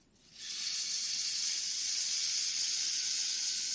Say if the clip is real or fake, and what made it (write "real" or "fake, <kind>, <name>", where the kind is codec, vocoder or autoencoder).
fake, vocoder, WaveNeXt